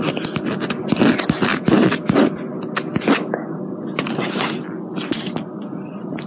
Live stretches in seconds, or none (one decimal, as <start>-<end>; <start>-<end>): 0.0-6.3

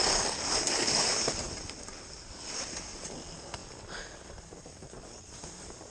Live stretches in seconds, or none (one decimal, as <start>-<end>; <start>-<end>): 0.0-5.9